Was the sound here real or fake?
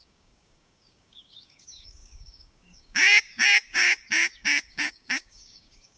fake